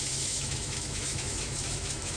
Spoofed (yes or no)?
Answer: yes